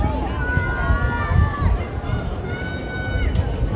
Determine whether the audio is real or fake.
real